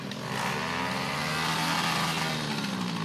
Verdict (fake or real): real